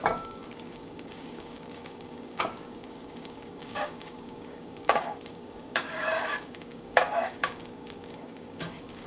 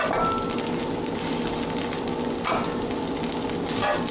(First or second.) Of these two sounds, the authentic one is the second